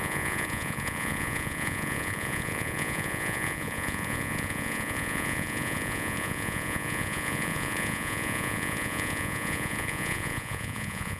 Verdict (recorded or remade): remade